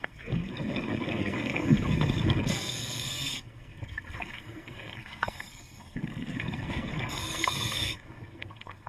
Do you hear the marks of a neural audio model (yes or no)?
yes